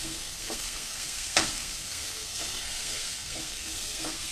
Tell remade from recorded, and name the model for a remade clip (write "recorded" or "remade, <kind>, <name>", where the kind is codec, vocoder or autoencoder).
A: remade, codec, SNAC